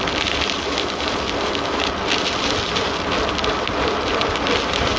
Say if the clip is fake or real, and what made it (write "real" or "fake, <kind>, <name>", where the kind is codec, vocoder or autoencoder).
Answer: real